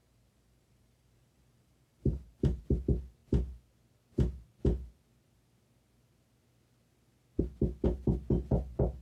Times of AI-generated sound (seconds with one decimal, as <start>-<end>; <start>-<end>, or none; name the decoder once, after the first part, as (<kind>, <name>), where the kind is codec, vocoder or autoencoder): 0.0-2.6 (vocoder, BigVGAN v2)